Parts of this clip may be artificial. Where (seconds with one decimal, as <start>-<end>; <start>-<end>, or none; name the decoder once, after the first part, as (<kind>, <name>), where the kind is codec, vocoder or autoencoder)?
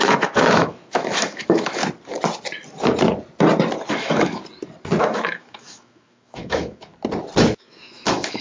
0.0-1.8 (autoencoder, DAC-VAE); 3.9-4.4; 5.0-6.9; 7.5-8.4